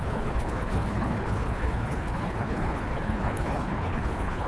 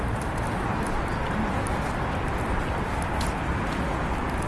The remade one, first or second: first